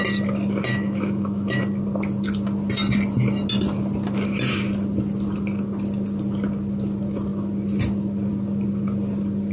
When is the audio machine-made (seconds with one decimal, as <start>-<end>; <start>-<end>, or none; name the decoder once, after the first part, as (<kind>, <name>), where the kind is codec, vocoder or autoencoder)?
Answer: 0.7-1.6 (autoencoder, DAC-VAE)